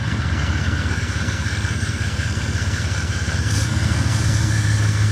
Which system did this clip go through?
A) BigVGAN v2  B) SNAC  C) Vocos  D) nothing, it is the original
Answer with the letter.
B